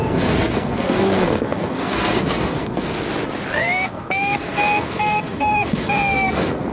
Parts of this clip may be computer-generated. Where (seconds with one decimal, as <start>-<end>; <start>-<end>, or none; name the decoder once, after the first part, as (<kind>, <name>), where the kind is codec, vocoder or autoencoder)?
0.0-2.9 (codec, SNAC); 3.5-6.7